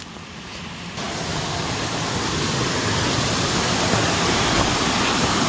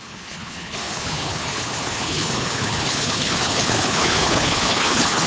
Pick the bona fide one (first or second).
first